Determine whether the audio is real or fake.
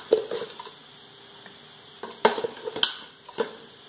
real